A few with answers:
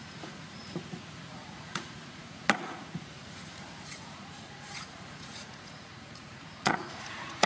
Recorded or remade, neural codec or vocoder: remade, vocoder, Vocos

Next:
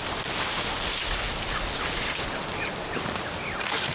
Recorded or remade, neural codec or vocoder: recorded